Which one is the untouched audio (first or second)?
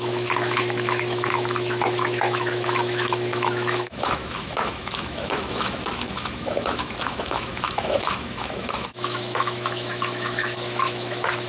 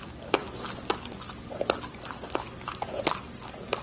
second